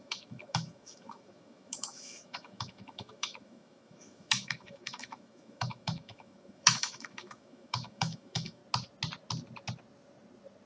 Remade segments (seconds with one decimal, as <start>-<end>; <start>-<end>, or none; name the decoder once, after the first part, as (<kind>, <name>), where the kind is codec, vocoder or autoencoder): 0.0-8.6 (autoencoder, DAC-VAE)